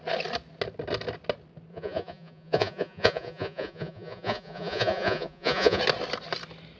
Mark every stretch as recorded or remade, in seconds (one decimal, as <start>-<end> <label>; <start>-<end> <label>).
0.0-1.7 recorded; 1.7-5.8 remade; 5.8-6.8 recorded

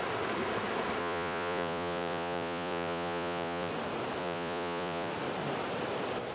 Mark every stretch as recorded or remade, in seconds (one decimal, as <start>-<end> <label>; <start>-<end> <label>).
0.0-1.0 recorded; 1.0-3.7 remade; 3.7-4.2 recorded; 4.2-5.1 remade; 5.1-6.3 recorded

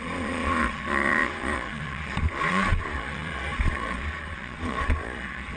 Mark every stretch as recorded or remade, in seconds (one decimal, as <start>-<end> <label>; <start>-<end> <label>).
0.0-5.6 remade

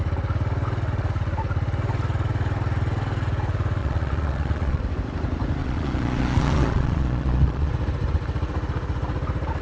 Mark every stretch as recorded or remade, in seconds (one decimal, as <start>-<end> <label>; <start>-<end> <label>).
0.0-3.8 recorded; 3.8-4.8 remade; 4.8-5.6 recorded; 5.6-7.7 remade; 7.7-9.6 recorded

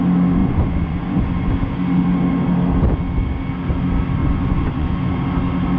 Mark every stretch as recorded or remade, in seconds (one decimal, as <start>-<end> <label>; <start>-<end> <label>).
0.0-0.4 recorded; 0.4-1.5 remade; 1.5-4.2 recorded; 4.2-5.2 remade; 5.2-5.8 recorded

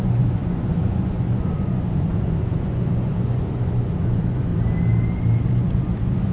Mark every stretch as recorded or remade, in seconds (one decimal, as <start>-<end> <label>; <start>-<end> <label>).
0.0-4.5 remade; 4.5-5.5 recorded; 5.5-6.3 remade

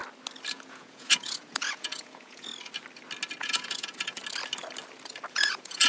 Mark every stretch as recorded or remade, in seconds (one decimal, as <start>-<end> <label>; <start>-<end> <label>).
0.0-0.5 recorded; 0.5-2.5 remade; 2.5-3.4 recorded; 3.4-4.2 remade; 4.2-5.3 recorded; 5.3-5.9 remade